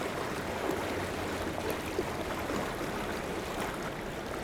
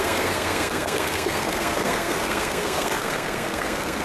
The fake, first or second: second